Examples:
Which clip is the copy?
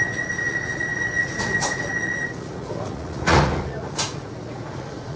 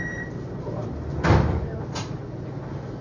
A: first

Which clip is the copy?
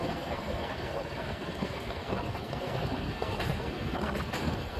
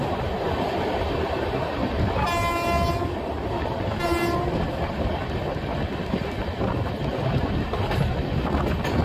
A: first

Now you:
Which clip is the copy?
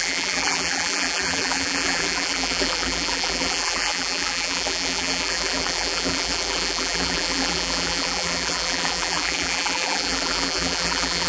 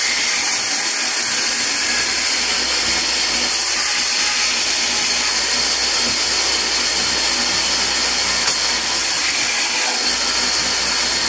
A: first